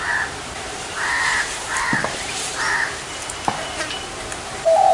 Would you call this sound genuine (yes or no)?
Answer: no